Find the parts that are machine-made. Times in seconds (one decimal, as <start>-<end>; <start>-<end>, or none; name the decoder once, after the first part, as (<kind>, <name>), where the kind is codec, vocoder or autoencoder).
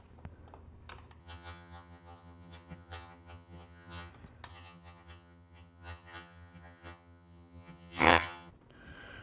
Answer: 1.2-4.1 (vocoder, HiFi-GAN); 4.5-8.5